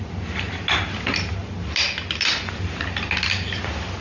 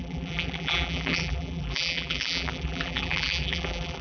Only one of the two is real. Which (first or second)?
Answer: first